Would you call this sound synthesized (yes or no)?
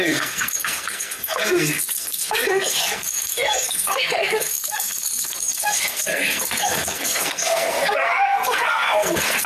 yes